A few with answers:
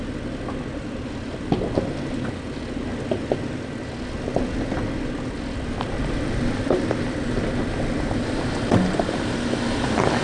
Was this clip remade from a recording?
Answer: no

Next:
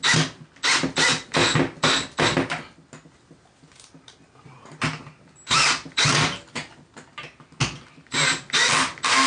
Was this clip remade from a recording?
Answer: no